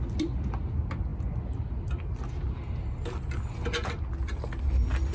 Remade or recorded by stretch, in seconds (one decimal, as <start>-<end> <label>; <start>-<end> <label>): 0.0-5.1 recorded